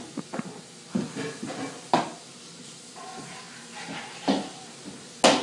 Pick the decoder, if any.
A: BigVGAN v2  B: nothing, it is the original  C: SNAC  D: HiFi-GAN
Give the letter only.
B